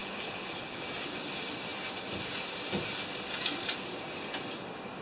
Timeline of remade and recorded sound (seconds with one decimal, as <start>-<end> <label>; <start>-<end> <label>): 0.0-0.8 remade; 0.8-5.0 recorded